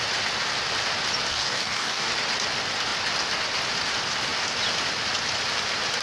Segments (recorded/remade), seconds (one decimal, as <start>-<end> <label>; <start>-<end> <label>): 0.0-1.3 recorded; 1.3-2.1 remade; 2.1-6.0 recorded